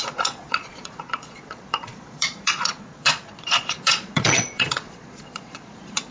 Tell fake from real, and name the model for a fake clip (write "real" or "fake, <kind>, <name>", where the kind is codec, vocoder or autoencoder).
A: fake, vocoder, Vocos